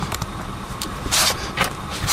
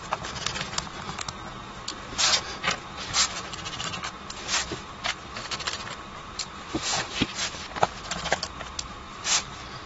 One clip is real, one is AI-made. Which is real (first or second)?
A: second